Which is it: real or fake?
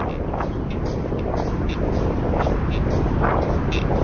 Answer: real